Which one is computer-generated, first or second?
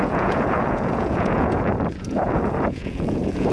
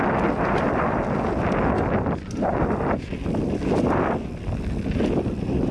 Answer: first